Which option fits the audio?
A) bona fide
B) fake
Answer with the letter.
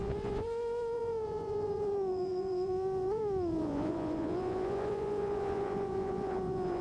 B